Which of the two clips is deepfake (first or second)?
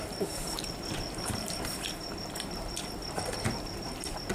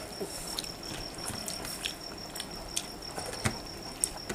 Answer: first